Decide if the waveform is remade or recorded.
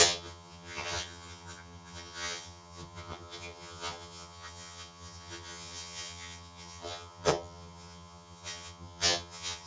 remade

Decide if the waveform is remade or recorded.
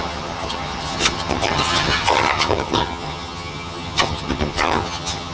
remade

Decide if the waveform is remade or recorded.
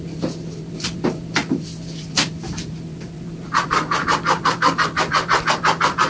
recorded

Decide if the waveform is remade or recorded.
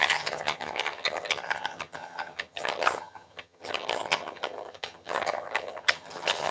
remade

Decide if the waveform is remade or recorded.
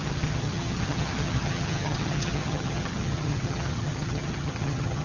remade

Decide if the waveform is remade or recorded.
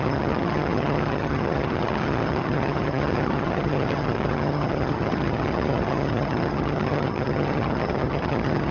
remade